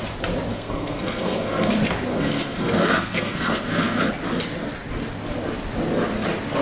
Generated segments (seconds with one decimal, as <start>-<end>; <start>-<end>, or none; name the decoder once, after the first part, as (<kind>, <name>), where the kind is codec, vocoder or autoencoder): 0.5-1.7 (codec, SNAC); 2.1-4.1